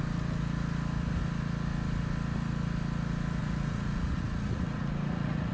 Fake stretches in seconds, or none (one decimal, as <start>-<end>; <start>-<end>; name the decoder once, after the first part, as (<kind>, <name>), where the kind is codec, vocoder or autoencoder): 3.4-5.5 (vocoder, Vocos)